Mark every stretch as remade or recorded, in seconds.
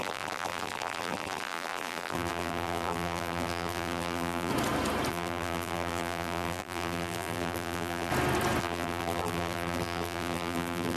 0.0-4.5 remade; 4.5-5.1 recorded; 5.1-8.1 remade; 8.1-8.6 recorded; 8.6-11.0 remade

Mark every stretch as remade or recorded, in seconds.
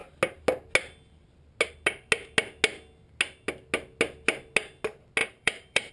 0.0-5.2 recorded; 5.2-5.9 remade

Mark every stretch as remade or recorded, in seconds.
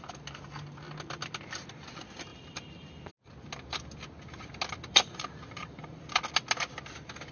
0.0-2.3 recorded; 2.3-3.1 remade; 3.1-4.9 recorded; 4.9-6.2 remade; 6.2-7.3 recorded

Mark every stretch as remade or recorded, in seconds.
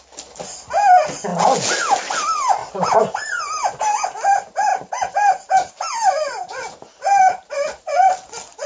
0.0-2.6 recorded; 2.6-3.8 remade; 3.8-4.7 recorded; 4.7-5.7 remade; 5.7-6.9 recorded; 6.9-7.5 remade; 7.5-8.7 recorded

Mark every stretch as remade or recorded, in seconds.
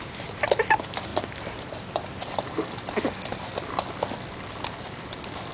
0.0-1.1 recorded; 1.1-2.9 remade; 2.9-5.5 recorded